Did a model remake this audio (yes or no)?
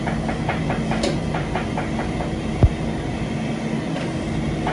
no